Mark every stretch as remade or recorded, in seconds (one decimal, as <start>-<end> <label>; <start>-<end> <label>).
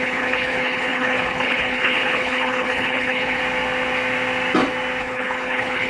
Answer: 0.0-3.4 remade; 3.4-5.0 recorded; 5.0-5.9 remade